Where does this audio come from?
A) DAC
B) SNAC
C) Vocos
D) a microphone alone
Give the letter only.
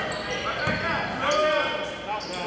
D